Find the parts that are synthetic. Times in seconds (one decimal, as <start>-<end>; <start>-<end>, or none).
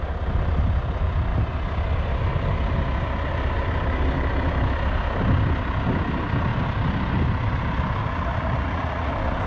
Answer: 8.0-9.1